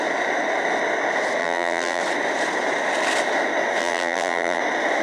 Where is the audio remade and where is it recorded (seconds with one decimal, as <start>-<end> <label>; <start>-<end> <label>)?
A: 0.0-1.4 recorded; 1.4-2.0 remade; 2.0-3.8 recorded; 3.8-4.6 remade; 4.6-5.0 recorded